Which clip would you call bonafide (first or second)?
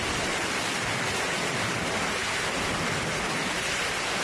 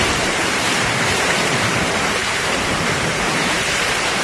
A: first